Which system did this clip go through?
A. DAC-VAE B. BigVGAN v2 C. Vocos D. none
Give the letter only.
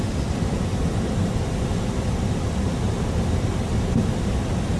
D